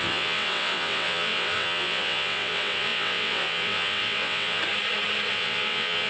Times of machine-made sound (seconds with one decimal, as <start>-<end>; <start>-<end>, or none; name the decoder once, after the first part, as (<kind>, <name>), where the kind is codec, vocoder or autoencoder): 0.0-4.6 (vocoder, WaveNeXt); 5.3-6.1